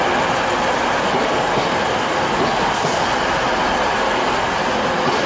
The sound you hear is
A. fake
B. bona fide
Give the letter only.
B